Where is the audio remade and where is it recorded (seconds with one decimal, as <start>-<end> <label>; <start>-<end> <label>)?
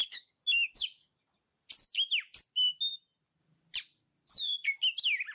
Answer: 0.0-1.2 remade; 1.2-5.3 recorded